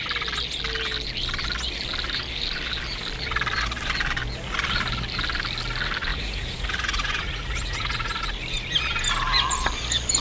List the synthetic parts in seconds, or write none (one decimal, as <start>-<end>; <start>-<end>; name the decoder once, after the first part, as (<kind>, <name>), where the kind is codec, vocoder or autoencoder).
6.1-8.2 (vocoder, Vocos)